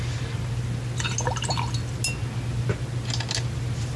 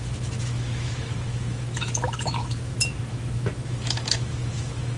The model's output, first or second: second